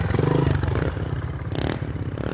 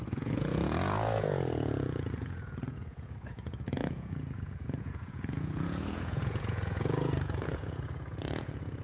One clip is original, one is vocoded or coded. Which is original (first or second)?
first